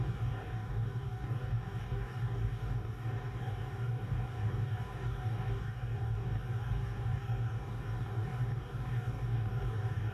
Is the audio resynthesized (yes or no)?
yes